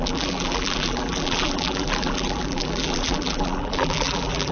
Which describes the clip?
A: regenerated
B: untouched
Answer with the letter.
A